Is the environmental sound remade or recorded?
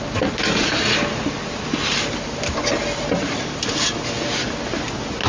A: recorded